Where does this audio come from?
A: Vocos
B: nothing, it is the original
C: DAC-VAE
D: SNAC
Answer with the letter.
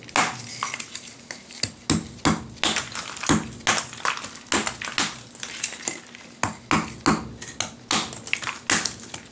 B